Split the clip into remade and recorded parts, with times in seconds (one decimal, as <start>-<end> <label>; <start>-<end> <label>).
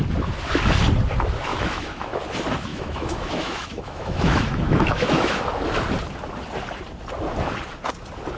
0.0-1.5 recorded; 1.5-2.2 remade; 2.2-2.7 recorded; 2.7-5.4 remade; 5.4-8.4 recorded